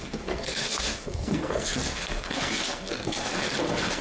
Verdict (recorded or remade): remade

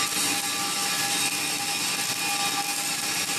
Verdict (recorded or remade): recorded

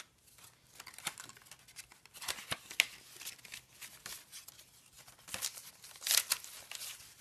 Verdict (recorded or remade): recorded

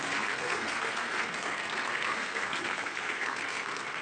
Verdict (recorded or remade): remade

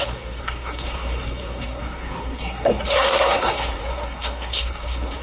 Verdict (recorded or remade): remade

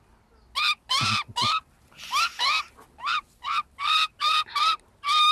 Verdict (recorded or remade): recorded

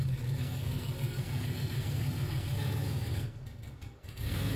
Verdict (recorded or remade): remade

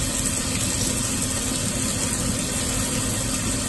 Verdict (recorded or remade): recorded